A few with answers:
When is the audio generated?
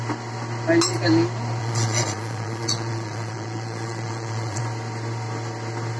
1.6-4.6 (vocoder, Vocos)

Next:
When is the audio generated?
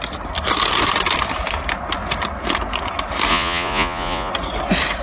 3.3-4.3 (vocoder, Vocos)